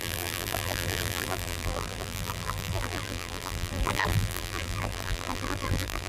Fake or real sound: fake